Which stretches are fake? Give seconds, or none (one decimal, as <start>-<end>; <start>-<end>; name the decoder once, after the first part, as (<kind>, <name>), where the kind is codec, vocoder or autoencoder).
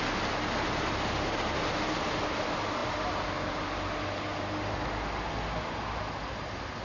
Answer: none